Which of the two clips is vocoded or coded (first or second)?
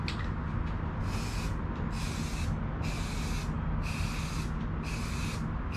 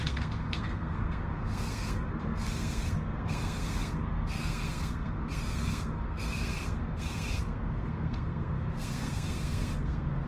second